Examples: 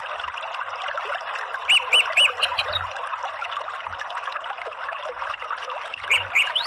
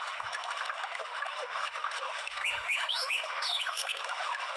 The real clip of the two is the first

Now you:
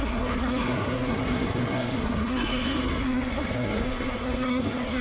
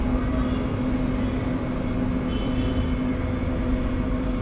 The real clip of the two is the second